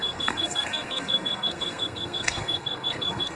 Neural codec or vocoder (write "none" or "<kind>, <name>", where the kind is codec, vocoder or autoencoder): codec, SNAC